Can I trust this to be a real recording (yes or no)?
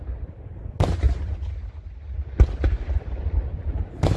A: yes